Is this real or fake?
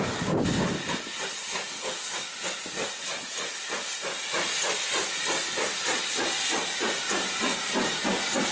real